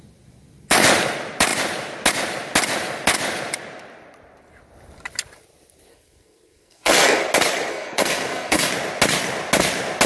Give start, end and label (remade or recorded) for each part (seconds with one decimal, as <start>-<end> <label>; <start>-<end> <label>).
0.0-5.9 recorded; 5.9-7.2 remade; 7.2-7.7 recorded; 7.7-8.7 remade; 8.7-10.1 recorded